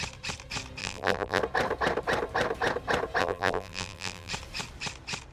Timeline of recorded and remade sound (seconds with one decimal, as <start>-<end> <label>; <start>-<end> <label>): 0.0-0.8 recorded; 0.8-1.4 remade; 1.4-3.2 recorded; 3.2-4.3 remade; 4.3-5.3 recorded